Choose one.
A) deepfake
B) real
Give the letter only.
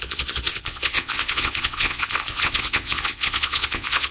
A